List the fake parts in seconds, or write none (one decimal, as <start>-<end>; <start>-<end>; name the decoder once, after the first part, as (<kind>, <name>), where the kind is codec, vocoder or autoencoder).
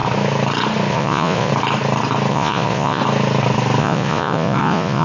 0.9-1.5 (vocoder, Vocos); 2.3-3.0; 3.8-5.0